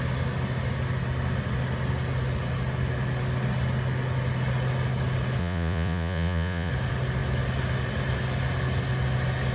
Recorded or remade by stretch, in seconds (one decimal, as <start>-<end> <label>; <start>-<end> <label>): 0.0-5.4 recorded; 5.4-6.7 remade; 6.7-9.5 recorded